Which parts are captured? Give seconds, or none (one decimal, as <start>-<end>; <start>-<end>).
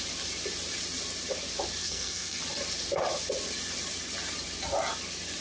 0.0-1.8; 2.4-5.4